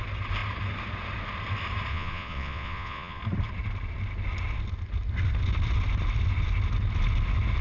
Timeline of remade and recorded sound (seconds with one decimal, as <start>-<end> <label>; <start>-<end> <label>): 0.0-1.9 recorded; 1.9-3.2 remade; 3.2-7.6 recorded